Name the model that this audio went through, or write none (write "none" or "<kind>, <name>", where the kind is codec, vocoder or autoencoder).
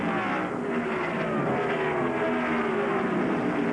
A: none